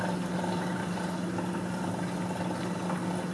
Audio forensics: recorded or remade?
recorded